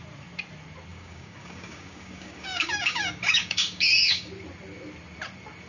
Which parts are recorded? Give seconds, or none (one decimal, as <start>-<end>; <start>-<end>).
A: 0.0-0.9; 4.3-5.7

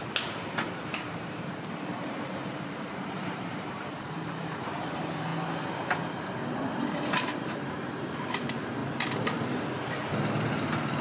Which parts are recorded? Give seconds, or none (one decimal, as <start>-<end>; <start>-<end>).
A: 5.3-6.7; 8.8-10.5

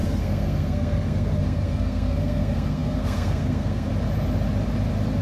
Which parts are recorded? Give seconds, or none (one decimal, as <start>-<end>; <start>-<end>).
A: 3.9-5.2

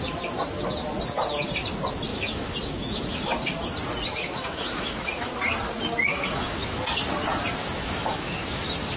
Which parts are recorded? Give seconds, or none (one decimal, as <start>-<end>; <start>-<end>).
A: 0.0-2.1; 3.4-4.1; 5.3-6.1; 6.8-7.6